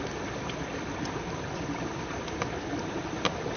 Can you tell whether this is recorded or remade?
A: recorded